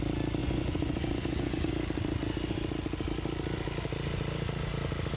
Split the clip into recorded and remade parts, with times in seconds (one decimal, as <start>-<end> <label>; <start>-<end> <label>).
0.0-0.4 recorded; 0.4-1.7 remade; 1.7-5.2 recorded

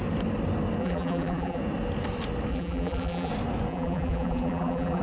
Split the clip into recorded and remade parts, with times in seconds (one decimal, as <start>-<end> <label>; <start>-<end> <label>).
0.0-0.8 recorded; 0.8-1.6 remade; 1.6-2.5 recorded; 2.5-3.3 remade; 3.3-3.7 recorded; 3.7-5.0 remade

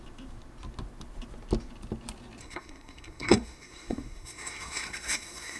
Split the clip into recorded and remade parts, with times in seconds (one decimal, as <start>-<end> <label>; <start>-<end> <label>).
0.0-2.4 recorded; 2.4-5.6 remade

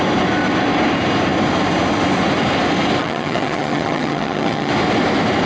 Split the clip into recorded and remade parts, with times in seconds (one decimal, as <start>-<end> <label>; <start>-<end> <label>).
0.0-3.0 recorded; 3.0-4.7 remade; 4.7-5.5 recorded

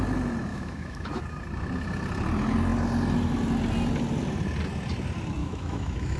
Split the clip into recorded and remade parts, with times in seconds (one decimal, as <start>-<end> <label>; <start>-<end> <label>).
0.0-0.5 recorded; 0.5-1.2 remade; 1.2-5.4 recorded; 5.4-6.2 remade

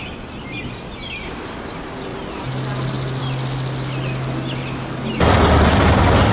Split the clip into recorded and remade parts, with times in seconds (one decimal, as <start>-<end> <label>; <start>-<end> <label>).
0.0-6.3 recorded

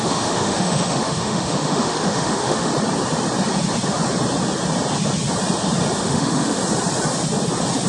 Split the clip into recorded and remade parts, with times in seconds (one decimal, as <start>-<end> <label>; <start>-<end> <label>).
0.0-2.7 remade; 2.7-6.0 recorded; 6.0-6.6 remade; 6.6-7.9 recorded

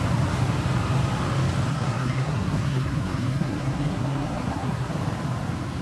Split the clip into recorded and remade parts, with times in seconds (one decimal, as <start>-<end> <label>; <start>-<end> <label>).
0.0-1.7 recorded; 1.7-4.9 remade; 4.9-5.8 recorded